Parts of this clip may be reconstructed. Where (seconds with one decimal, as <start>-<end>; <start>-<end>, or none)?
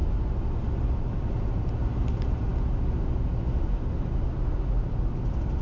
none